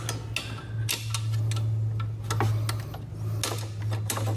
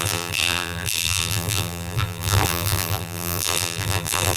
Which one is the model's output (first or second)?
second